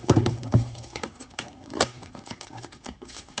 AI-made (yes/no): yes